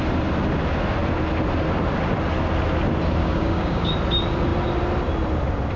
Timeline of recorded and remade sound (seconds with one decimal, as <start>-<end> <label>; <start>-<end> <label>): 0.0-3.2 recorded; 3.2-3.9 remade; 3.9-5.8 recorded